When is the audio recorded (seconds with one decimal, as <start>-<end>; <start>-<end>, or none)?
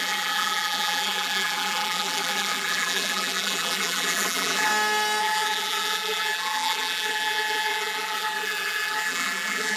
4.7-5.2